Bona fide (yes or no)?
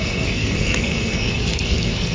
no